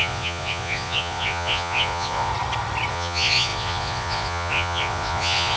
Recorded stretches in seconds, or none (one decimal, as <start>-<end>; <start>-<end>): 2.3-2.9

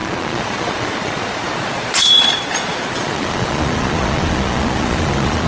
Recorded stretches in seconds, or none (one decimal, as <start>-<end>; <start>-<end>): none